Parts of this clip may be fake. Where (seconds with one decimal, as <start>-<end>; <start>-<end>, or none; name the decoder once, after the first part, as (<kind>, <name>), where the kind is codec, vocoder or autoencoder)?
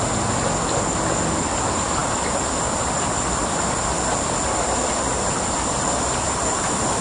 2.0-3.8 (vocoder, BigVGAN v2)